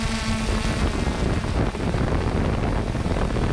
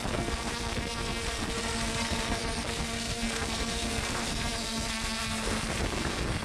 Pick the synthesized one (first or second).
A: second